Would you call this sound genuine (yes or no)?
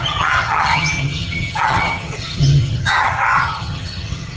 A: no